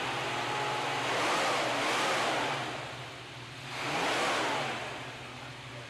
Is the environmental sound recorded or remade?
recorded